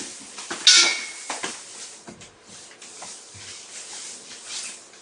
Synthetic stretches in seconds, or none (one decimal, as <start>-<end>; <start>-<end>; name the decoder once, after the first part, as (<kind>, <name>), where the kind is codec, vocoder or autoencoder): none